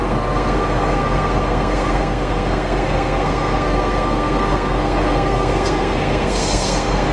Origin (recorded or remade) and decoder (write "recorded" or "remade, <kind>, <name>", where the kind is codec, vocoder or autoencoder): remade, codec, SNAC